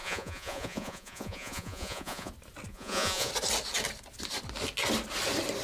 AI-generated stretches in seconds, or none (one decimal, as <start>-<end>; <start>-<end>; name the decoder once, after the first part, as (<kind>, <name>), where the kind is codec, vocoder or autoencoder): 0.0-2.3 (vocoder, Vocos); 2.7-3.3